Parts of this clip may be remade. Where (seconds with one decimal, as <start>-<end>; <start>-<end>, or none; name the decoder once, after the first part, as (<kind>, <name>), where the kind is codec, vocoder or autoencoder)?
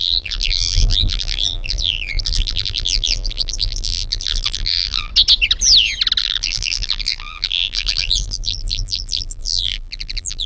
0.0-5.1 (vocoder, BigVGAN v2); 6.2-10.5